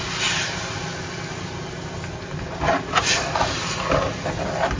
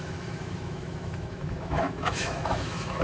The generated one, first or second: second